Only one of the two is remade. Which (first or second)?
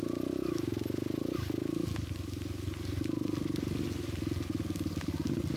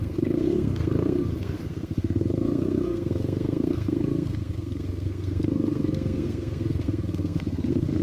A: second